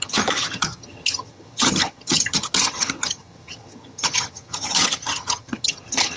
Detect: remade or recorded remade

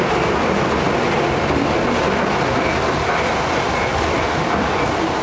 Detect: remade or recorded recorded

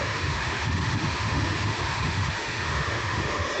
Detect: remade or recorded remade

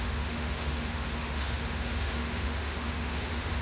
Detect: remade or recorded remade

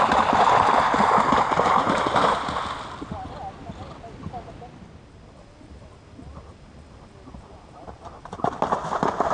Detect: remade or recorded recorded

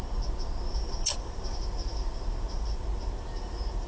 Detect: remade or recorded recorded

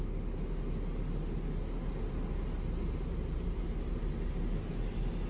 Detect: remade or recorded recorded